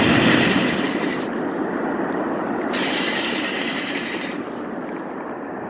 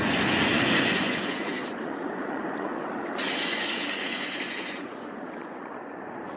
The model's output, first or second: second